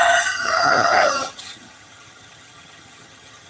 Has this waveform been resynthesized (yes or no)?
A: yes